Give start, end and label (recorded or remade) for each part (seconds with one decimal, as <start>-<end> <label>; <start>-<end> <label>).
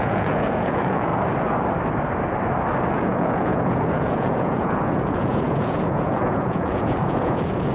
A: 0.0-1.1 remade; 1.1-2.9 recorded; 2.9-7.7 remade